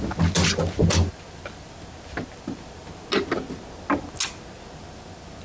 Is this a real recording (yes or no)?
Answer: yes